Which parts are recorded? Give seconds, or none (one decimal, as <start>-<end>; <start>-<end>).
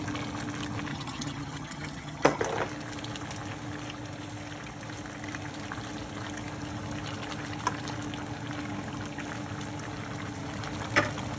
0.0-0.9; 2.4-11.4